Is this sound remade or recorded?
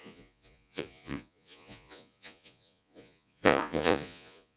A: remade